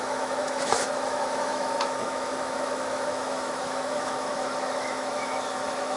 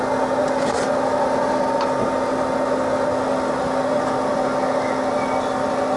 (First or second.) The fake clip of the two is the first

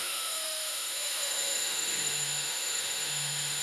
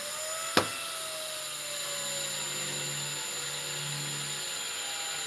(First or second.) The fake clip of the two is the first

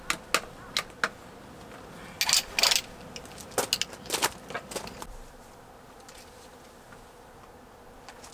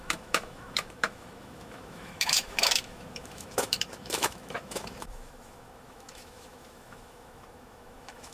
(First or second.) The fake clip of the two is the second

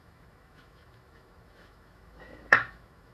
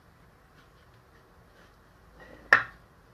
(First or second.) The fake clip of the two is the first